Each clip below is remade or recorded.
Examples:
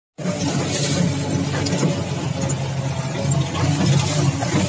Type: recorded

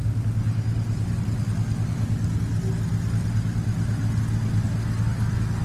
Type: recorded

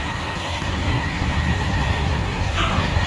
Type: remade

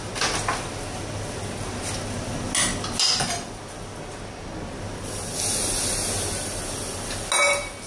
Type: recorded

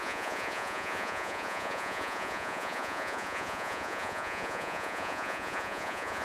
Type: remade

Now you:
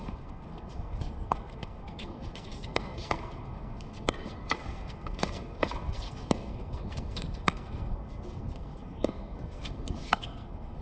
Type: remade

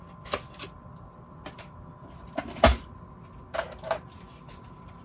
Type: recorded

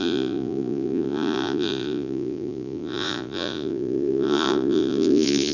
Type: remade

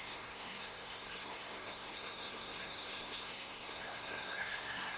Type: remade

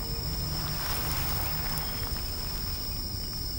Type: recorded